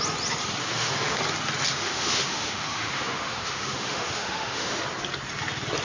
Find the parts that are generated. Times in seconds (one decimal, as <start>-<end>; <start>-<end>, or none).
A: 0.6-1.2; 1.7-4.8